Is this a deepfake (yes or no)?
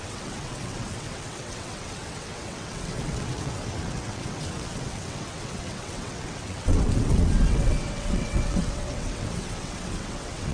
yes